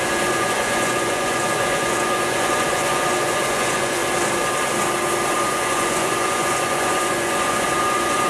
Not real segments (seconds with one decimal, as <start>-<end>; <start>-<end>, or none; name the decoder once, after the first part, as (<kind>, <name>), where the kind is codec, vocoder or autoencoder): 0.0-4.0 (vocoder, Vocos); 5.4-8.3